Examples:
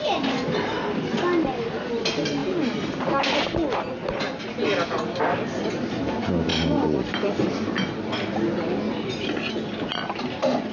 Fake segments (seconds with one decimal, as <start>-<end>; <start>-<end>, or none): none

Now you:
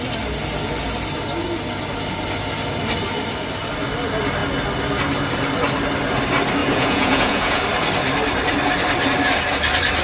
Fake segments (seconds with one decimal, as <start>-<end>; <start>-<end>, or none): 6.6-7.6

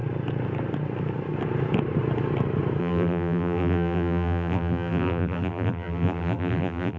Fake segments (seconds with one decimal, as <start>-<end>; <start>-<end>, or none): 2.8-7.0

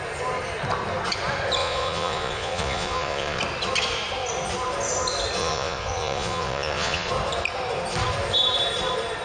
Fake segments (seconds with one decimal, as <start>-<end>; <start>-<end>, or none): 1.6-3.4; 5.4-7.1

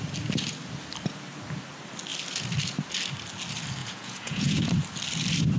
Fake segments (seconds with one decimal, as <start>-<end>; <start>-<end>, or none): 3.8-4.6